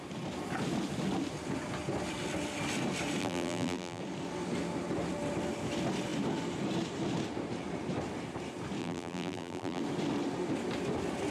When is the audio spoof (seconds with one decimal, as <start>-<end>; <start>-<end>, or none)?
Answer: 3.2-4.0; 8.8-9.8